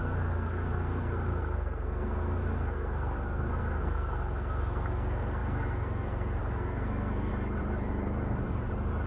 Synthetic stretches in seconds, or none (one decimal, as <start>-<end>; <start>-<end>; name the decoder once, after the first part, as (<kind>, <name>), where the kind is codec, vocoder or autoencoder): 0.0-7.3 (codec, SNAC)